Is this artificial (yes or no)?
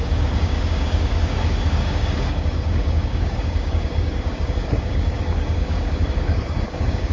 yes